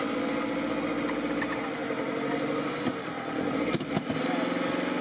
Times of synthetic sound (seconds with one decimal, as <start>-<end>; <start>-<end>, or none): none